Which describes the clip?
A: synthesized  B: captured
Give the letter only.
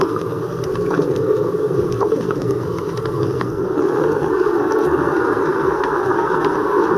A